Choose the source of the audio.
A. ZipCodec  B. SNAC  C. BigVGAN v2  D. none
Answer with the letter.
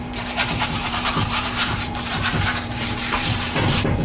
C